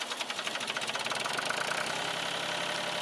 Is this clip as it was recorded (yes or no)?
yes